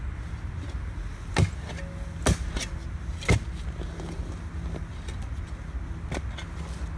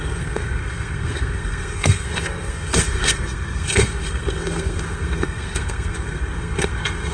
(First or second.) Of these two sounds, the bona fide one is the first